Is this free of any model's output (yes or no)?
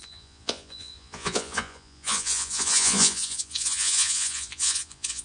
no